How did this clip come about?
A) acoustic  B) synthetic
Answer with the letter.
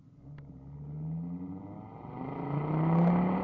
A